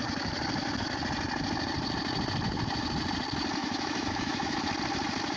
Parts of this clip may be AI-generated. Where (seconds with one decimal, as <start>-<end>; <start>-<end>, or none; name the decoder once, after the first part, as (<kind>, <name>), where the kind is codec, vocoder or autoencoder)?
3.6-4.6 (autoencoder, DAC-VAE)